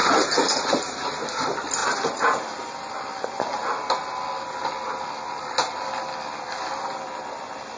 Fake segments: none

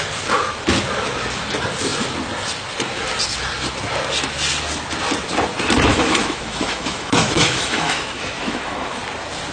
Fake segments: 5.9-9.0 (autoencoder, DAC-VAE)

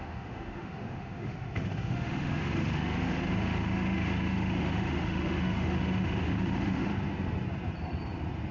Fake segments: 0.0-6.9 (autoencoder, DAC-VAE)